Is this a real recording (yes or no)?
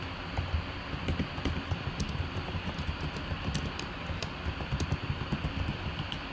yes